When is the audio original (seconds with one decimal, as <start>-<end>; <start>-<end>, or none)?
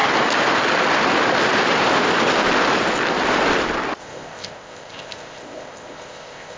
0.0-4.0